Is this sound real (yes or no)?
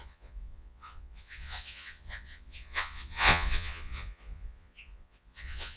no